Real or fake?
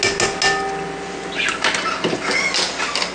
real